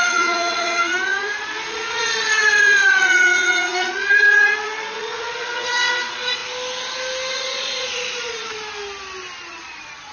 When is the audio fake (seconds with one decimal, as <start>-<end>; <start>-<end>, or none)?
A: 0.0-6.4; 7.3-8.6; 9.4-10.1